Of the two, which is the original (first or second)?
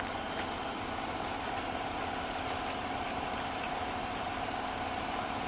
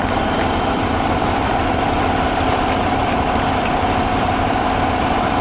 first